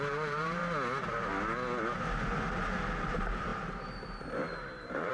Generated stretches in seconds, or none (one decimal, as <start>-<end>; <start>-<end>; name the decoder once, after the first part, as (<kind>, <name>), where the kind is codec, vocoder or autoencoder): 0.0-0.6 (vocoder, BigVGAN v2); 3.1-5.1